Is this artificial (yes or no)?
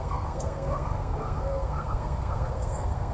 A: yes